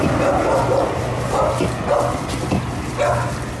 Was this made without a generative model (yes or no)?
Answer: yes